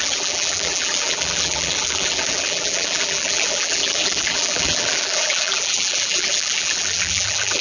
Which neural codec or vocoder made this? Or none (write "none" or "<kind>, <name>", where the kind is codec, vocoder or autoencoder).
vocoder, BigVGAN v2